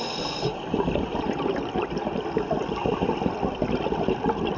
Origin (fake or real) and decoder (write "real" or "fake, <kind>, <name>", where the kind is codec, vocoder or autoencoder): real